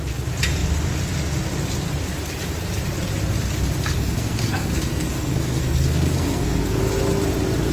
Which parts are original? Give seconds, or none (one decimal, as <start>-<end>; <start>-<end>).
0.0-3.9; 6.8-7.7